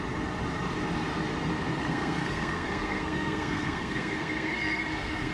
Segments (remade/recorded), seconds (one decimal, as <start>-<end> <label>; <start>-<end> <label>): 0.0-1.8 recorded; 1.8-5.3 remade